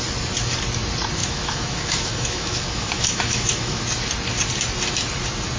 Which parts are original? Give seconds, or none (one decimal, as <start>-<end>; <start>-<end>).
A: 0.0-1.2; 3.8-5.6